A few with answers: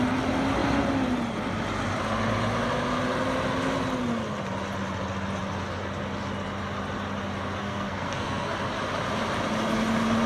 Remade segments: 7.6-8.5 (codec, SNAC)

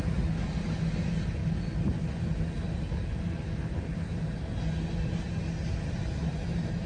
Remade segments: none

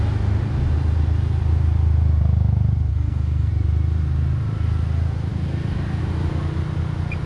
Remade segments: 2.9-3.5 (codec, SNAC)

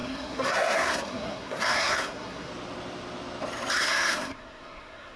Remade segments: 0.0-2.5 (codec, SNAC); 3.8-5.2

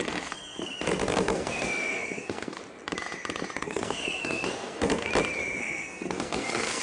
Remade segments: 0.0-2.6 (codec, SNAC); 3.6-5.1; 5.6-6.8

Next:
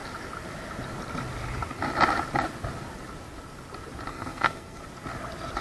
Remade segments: 4.1-4.8 (codec, SNAC)